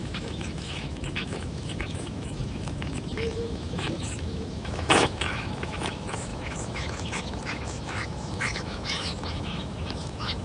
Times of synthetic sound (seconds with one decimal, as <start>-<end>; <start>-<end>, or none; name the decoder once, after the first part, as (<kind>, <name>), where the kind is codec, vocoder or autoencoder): 0.0-10.4 (autoencoder, DAC-VAE)